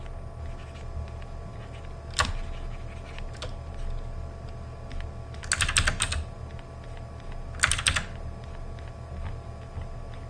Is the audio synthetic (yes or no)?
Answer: no